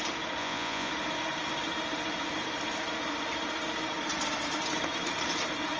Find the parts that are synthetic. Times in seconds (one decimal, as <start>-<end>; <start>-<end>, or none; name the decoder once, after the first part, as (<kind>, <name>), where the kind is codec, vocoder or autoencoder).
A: 0.4-0.9 (vocoder, Vocos)